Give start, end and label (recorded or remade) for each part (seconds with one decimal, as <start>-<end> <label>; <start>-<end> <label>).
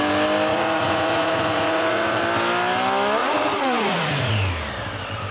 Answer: 0.0-0.5 recorded; 0.5-2.2 remade; 2.2-3.2 recorded; 3.2-4.3 remade; 4.3-5.3 recorded